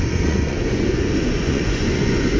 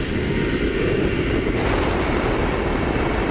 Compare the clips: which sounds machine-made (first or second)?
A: first